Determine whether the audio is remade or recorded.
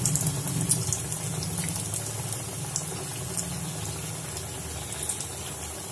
recorded